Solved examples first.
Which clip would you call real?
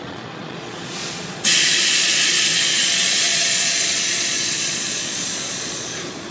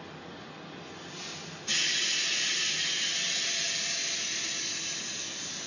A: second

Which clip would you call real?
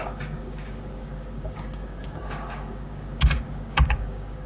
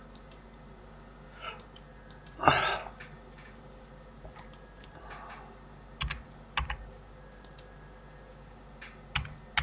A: second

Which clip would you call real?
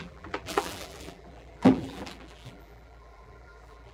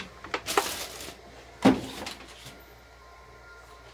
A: second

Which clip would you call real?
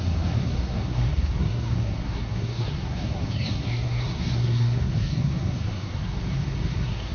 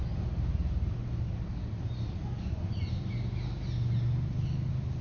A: second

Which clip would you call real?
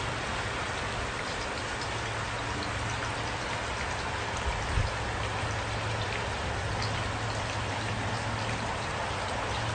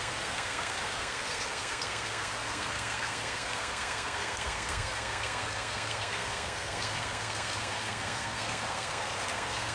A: first